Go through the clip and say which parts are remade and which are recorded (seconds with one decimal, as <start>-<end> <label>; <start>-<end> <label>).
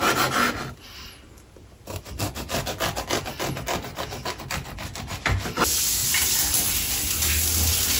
0.0-6.0 recorded; 6.0-6.9 remade; 6.9-8.0 recorded